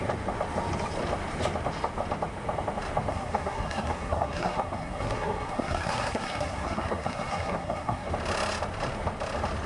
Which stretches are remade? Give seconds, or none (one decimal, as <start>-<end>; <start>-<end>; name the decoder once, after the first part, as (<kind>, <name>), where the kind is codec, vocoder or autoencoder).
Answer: 3.1-8.1 (codec, SNAC)